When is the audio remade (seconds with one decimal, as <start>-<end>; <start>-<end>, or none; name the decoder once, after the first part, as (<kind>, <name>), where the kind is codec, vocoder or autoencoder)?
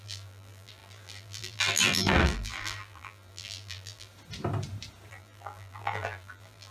0.0-4.1 (vocoder, BigVGAN v2); 5.1-6.7